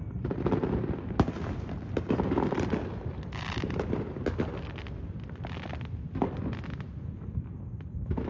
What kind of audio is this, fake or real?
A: real